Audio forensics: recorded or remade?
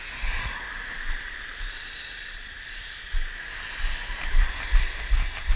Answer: recorded